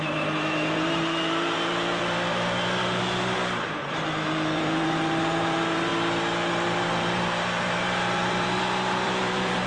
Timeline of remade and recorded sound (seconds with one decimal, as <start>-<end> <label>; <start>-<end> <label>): 0.0-5.9 remade; 5.9-6.5 recorded; 6.5-9.7 remade